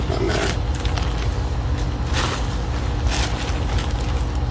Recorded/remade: recorded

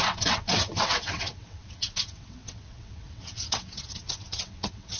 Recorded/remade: remade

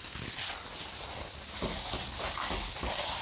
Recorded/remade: recorded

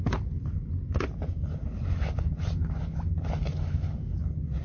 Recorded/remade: recorded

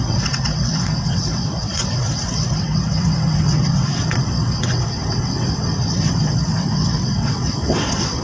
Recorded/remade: remade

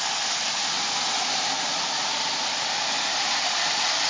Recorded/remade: recorded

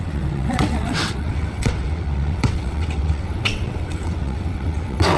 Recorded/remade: remade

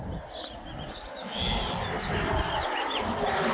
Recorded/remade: recorded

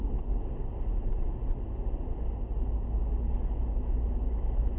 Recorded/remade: recorded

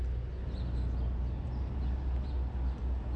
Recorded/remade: recorded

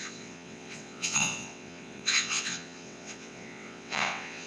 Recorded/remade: remade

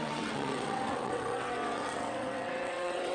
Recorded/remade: remade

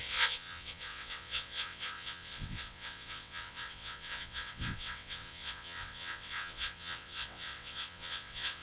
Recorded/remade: remade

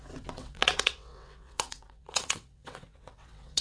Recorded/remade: remade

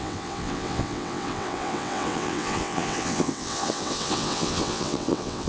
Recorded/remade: remade